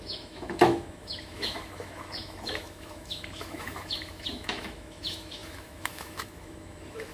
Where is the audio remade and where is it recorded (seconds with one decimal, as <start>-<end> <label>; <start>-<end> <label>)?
0.0-7.1 remade